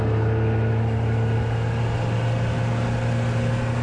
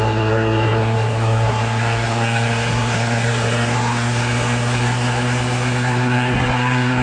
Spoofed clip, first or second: second